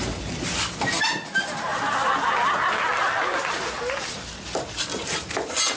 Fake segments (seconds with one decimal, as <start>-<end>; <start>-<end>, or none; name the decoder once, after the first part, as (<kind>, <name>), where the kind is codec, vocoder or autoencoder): none